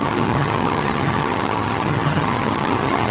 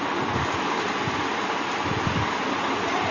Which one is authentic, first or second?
second